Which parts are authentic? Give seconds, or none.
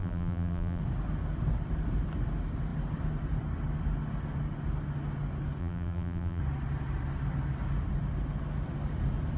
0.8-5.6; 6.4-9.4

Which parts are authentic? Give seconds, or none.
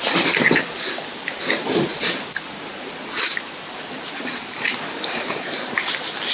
0.0-6.3